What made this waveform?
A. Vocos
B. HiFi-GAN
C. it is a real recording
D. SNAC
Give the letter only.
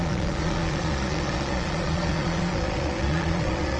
A